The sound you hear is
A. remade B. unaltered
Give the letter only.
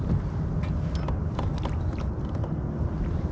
B